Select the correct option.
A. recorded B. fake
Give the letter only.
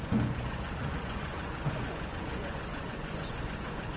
B